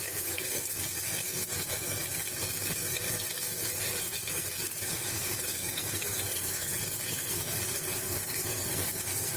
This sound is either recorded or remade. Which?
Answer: remade